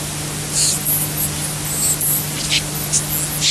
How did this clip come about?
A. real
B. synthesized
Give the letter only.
A